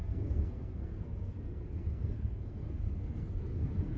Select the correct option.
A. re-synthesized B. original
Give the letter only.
A